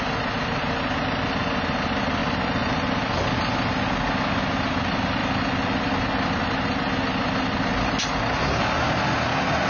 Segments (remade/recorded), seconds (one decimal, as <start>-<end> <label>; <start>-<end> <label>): 0.0-2.2 recorded; 2.2-2.9 remade; 2.9-5.2 recorded; 5.2-8.2 remade; 8.2-9.7 recorded